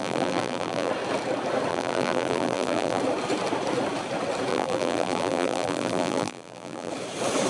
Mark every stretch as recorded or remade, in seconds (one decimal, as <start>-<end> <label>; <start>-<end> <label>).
0.0-0.9 remade; 0.9-1.7 recorded; 1.7-3.0 remade; 3.0-4.5 recorded; 4.5-6.9 remade; 6.9-7.5 recorded